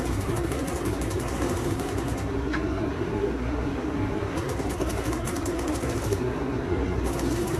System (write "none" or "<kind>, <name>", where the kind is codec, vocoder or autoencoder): codec, SNAC